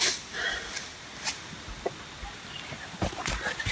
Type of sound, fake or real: real